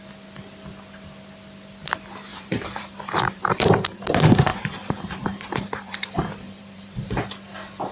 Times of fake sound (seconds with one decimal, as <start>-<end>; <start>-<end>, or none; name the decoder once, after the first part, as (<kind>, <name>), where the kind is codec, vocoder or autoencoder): 2.3-4.0 (vocoder, BigVGAN v2); 4.5-7.2